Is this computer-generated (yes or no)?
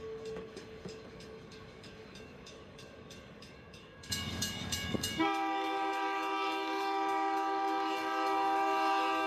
yes